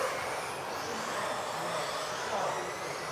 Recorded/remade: recorded